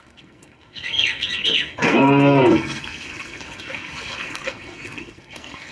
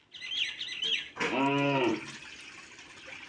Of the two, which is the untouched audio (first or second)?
second